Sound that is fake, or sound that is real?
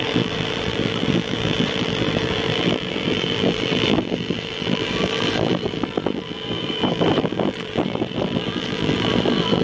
fake